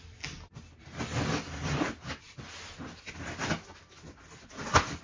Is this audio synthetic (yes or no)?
no